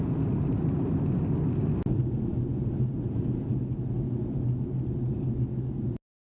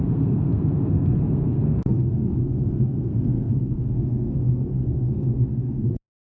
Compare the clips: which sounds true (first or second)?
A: first